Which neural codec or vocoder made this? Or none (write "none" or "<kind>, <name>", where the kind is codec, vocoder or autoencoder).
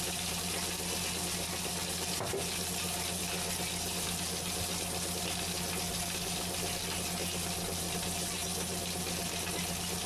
none